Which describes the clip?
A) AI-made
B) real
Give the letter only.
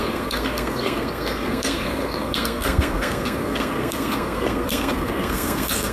A